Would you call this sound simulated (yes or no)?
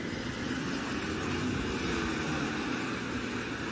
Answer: no